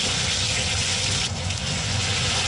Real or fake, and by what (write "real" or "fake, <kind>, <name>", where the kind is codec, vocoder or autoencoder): fake, vocoder, Vocos